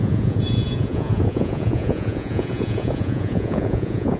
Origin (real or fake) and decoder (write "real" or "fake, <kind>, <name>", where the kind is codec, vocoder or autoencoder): fake, vocoder, Vocos